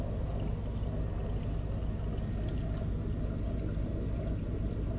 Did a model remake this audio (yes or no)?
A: no